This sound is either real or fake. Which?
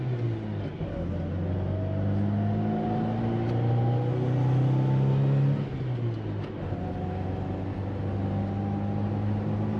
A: real